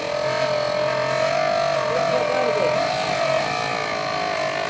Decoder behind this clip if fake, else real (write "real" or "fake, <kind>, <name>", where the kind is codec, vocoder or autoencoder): real